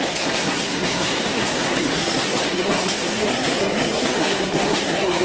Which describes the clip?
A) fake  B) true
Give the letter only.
A